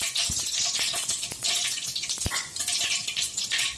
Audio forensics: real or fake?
fake